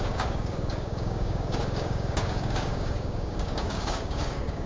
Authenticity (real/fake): fake